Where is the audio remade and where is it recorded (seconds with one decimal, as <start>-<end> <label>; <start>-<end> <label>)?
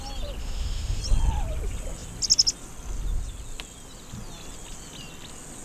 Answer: 0.0-0.4 recorded; 0.4-1.0 remade; 1.0-5.6 recorded